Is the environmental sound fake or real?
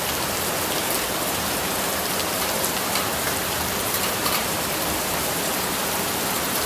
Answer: fake